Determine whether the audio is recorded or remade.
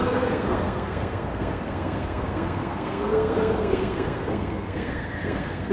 remade